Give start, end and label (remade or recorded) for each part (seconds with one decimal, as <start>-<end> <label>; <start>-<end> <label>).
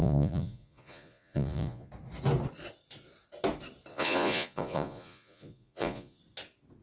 0.0-1.9 remade; 1.9-3.9 recorded; 3.9-6.2 remade; 6.2-6.8 recorded